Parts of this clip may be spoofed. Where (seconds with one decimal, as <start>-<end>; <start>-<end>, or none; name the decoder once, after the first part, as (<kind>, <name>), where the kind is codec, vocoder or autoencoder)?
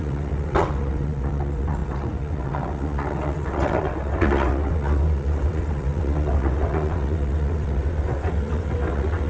0.0-9.3 (vocoder, WaveNeXt)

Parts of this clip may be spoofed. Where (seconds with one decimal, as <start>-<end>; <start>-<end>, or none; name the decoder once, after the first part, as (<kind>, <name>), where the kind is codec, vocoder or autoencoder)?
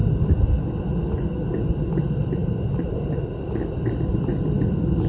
none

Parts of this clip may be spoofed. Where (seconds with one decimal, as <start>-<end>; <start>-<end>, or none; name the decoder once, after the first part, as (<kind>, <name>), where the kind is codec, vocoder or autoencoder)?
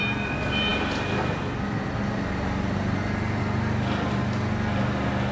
none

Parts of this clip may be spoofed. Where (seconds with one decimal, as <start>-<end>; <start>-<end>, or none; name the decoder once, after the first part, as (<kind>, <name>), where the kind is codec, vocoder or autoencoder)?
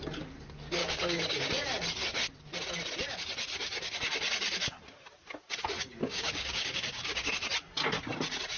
0.8-1.5 (codec, DAC); 6.0-7.3